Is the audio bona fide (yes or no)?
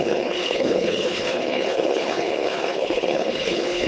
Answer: no